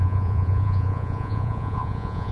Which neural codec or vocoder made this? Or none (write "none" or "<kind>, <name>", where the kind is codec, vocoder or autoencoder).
vocoder, Vocos